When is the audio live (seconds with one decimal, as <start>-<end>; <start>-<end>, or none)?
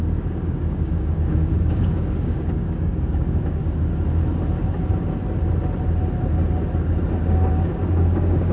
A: 3.6-7.5